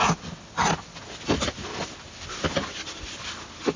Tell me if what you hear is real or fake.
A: real